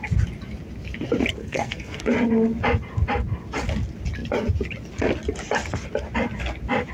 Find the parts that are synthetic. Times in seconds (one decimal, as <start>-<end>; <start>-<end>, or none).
1.4-2.0